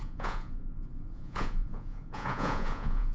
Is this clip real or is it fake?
fake